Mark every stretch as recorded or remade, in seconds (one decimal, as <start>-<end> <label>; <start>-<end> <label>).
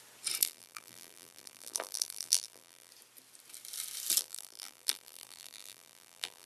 0.0-0.4 recorded; 0.4-2.9 remade; 2.9-4.2 recorded; 4.2-6.5 remade